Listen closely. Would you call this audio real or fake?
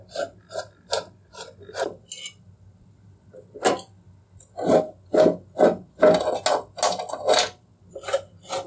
real